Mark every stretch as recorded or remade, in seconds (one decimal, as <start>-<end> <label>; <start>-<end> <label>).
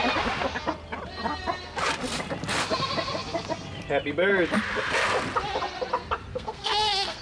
0.0-6.3 recorded; 6.3-7.2 remade